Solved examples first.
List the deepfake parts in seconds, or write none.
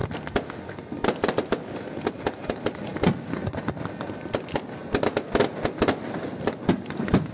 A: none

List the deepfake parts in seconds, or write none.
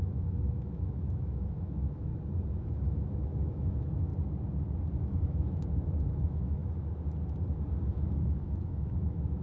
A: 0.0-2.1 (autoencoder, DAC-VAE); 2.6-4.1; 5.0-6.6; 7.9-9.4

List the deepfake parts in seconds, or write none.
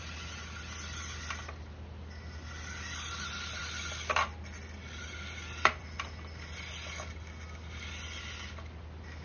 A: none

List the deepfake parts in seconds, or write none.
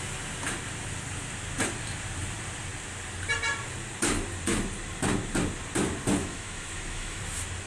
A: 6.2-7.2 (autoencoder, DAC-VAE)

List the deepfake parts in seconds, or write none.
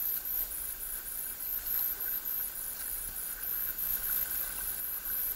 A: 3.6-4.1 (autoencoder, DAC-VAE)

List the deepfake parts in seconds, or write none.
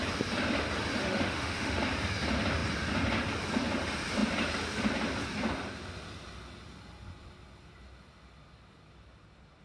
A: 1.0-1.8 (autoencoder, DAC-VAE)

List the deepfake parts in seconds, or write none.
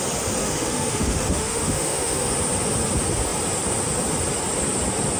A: 0.4-2.3 (autoencoder, DAC-VAE)